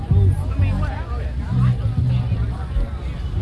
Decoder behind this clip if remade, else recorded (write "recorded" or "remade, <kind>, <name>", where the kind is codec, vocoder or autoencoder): recorded